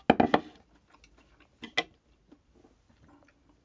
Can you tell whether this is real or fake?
real